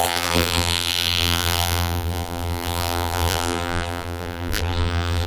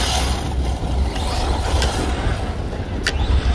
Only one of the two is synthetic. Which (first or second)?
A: first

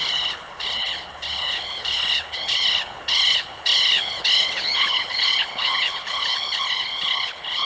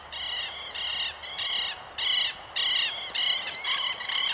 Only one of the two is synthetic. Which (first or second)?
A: first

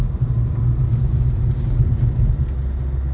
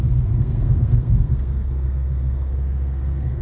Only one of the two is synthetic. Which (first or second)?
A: second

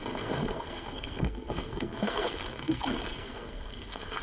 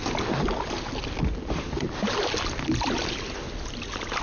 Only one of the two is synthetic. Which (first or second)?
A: first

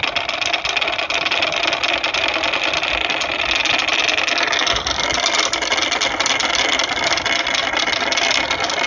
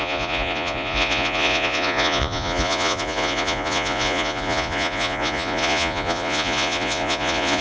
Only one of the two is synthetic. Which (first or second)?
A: second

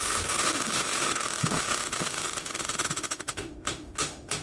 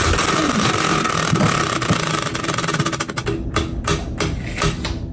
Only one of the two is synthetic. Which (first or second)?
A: first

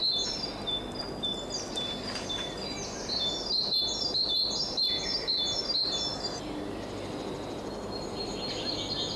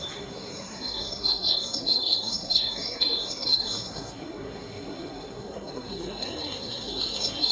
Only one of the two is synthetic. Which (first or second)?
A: second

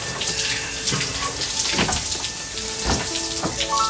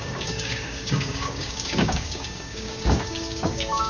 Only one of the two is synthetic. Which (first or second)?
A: second